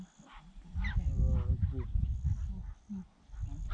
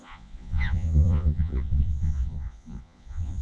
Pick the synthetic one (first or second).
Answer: second